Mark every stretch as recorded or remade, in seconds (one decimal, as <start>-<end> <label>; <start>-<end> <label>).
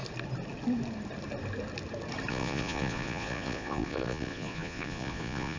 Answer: 0.0-2.3 recorded; 2.3-5.6 remade